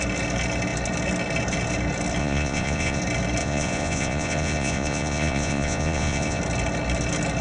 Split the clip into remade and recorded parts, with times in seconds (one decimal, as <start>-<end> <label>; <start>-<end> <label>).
0.0-2.2 recorded; 2.2-3.0 remade; 3.0-3.4 recorded; 3.4-6.4 remade; 6.4-7.4 recorded